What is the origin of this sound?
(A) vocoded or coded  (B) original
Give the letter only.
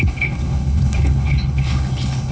A